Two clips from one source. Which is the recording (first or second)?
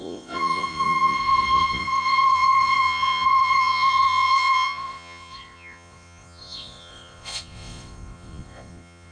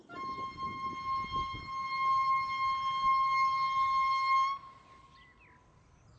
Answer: second